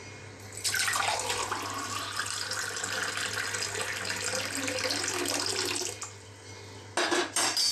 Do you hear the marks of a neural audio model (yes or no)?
no